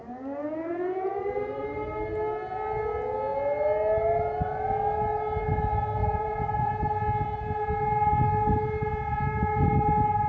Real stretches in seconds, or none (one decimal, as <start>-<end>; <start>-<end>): 1.2-6.0; 6.7-10.3